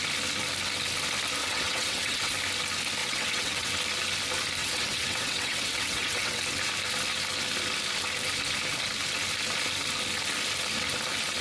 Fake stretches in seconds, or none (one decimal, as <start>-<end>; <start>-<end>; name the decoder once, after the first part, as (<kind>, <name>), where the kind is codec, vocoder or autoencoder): 1.4-2.3 (vocoder, WaveNeXt); 3.0-3.7; 4.6-6.4